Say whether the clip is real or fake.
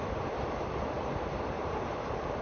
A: real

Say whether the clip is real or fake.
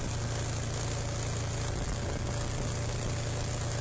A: real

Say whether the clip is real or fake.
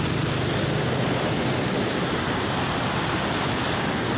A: real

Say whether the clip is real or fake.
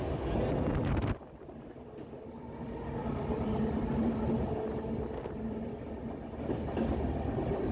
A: real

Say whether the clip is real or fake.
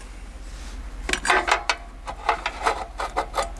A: real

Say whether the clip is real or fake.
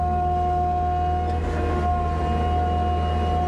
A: real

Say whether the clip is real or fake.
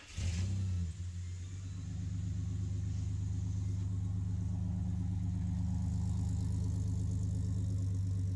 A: real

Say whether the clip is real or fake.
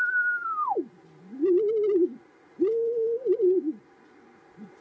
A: real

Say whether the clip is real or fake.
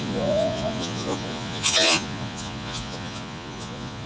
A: fake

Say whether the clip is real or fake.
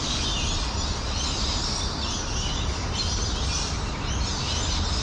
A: real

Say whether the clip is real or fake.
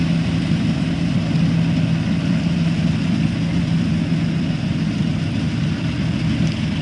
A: real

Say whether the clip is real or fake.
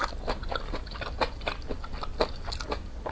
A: real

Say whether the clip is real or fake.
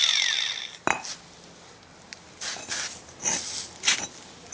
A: real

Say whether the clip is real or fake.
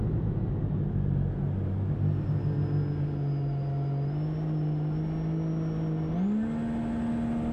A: real